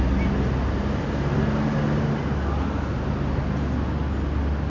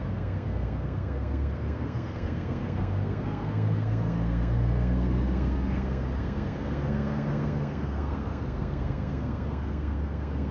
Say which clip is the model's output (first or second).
second